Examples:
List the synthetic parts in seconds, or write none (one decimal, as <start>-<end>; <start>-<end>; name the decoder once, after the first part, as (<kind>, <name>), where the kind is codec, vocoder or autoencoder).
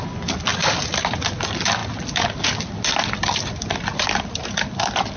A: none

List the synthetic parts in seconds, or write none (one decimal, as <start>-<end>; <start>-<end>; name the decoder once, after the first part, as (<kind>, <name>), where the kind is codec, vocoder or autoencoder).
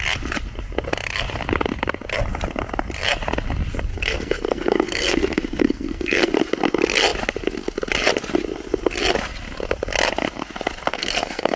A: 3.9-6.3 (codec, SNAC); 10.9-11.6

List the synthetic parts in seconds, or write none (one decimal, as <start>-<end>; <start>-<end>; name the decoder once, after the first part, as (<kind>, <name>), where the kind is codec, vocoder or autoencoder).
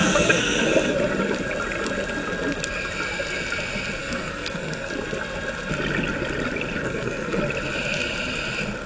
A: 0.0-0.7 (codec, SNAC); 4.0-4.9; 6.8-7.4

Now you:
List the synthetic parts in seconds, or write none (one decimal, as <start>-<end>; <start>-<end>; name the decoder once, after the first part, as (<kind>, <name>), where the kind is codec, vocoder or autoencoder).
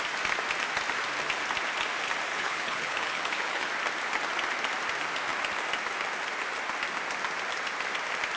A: 2.3-3.7 (codec, HILCodec)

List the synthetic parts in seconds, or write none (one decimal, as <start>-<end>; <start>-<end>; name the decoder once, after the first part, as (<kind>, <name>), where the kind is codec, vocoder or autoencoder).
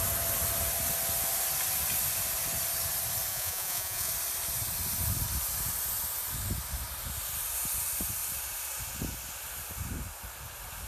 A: 3.3-4.1 (vocoder, Vocos)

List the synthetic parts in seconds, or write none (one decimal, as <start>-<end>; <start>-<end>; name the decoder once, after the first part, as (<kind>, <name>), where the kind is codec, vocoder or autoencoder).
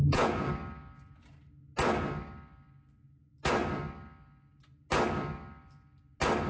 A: 0.0-0.5 (vocoder, Vocos)